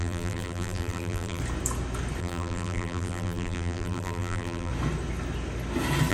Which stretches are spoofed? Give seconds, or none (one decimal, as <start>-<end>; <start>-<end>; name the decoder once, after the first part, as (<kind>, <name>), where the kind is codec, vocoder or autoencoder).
0.0-1.4 (vocoder, BigVGAN v2); 2.2-4.7

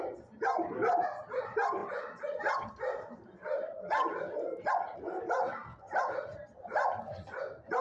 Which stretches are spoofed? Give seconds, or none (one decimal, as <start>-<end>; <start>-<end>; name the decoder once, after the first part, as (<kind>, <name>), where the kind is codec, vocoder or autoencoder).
1.8-4.7 (vocoder, BigVGAN v2); 6.3-7.0

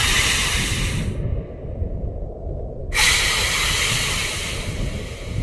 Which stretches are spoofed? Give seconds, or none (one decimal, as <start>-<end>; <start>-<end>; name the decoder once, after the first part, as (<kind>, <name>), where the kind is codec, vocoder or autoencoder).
none